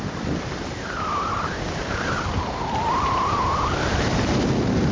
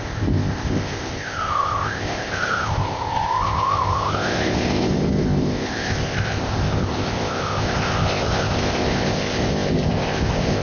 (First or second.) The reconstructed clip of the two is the second